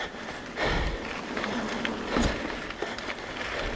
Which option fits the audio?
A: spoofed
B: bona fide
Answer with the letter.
B